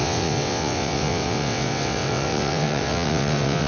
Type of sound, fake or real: fake